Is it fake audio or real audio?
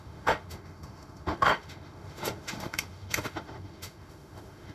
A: fake